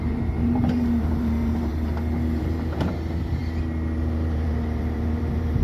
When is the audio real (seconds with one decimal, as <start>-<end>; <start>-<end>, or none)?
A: 1.7-2.4; 3.4-4.0